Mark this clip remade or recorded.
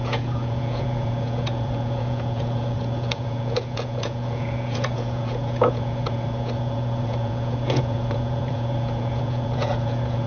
remade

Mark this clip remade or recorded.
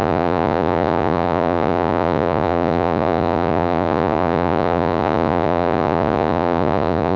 remade